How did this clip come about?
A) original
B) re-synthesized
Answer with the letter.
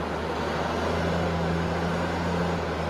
A